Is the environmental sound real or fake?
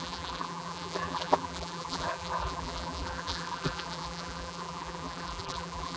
fake